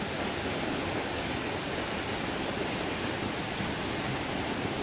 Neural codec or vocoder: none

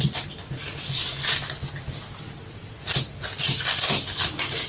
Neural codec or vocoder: none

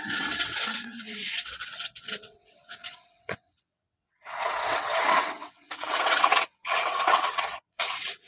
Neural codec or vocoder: vocoder, WaveNeXt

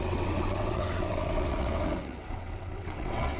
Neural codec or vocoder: vocoder, WaveNeXt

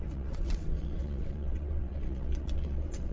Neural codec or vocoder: vocoder, WaveNeXt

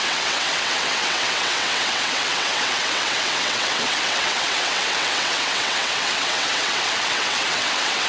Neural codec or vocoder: vocoder, WaveNeXt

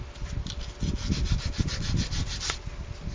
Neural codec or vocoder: none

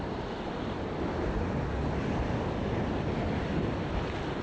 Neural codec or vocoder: none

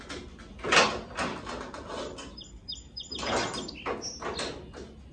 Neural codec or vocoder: none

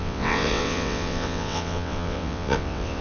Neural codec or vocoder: vocoder, WaveNeXt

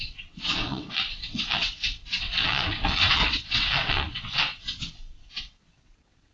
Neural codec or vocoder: vocoder, WaveNeXt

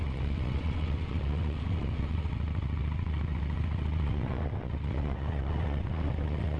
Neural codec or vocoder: vocoder, WaveNeXt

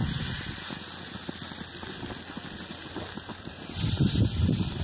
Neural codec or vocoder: none